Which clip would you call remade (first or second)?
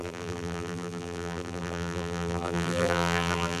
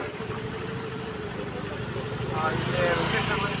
first